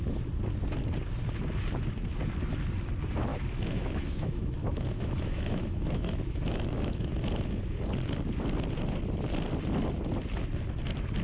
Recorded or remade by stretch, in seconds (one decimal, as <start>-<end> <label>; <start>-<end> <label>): 0.0-3.3 recorded; 3.3-7.1 remade; 7.1-11.2 recorded